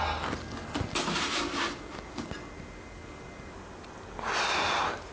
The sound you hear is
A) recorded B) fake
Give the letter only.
A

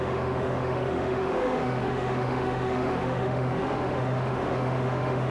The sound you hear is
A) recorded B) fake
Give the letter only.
B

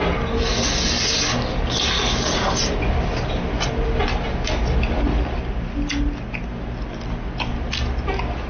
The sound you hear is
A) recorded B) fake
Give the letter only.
A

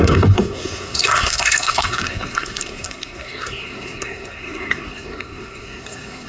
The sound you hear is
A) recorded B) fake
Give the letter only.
B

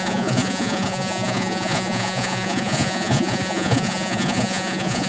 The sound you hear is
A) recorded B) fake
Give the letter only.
B